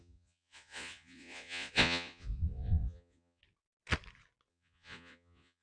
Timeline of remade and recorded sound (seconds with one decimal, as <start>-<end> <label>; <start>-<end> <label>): 0.0-3.4 remade; 3.4-4.5 recorded; 4.5-5.6 remade